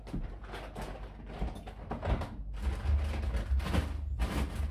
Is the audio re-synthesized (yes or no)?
no